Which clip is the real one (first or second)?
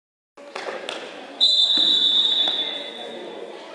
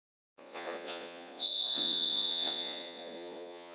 first